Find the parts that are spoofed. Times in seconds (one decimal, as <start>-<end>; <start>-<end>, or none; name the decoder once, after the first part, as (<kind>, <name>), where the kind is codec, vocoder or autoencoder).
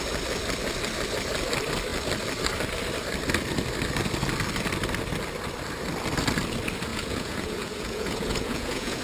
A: 6.9-9.0 (vocoder, Vocos)